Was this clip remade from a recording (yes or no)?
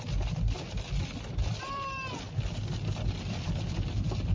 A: no